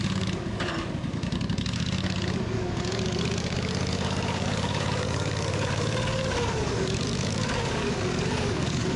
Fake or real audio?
fake